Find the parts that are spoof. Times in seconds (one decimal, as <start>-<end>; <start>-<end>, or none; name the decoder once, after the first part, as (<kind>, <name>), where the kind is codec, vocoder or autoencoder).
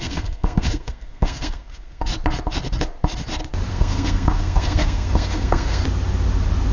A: 0.0-2.1 (codec, SNAC); 3.7-5.8